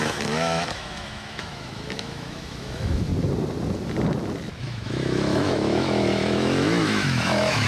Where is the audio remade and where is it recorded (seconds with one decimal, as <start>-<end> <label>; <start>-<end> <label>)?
0.0-3.1 remade; 3.1-4.6 recorded; 4.6-7.7 remade

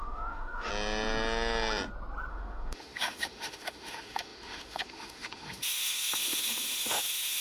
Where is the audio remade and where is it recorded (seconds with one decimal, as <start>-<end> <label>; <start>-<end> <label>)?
0.0-0.7 remade; 0.7-2.3 recorded; 2.3-7.4 remade

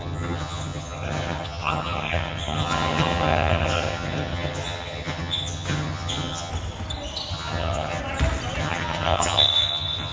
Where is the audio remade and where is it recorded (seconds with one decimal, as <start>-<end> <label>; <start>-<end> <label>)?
0.0-6.5 remade; 6.5-7.3 recorded; 7.3-8.0 remade; 8.0-8.6 recorded; 8.6-10.1 remade